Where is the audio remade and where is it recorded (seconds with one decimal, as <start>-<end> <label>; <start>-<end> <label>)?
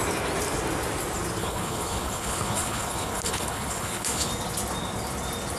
0.0-1.4 recorded; 1.4-4.3 remade; 4.3-5.6 recorded